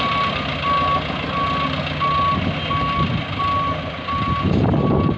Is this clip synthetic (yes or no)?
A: no